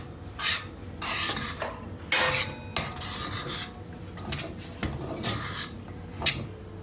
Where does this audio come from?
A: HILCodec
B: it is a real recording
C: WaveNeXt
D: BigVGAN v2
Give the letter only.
B